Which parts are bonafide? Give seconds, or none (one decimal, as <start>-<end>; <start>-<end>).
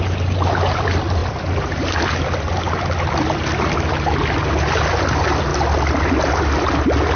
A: 0.0-7.2